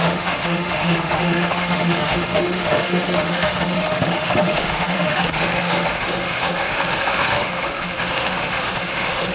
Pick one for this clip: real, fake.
fake